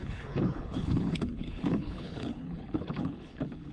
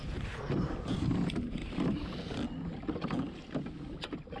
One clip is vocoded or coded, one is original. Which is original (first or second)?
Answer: second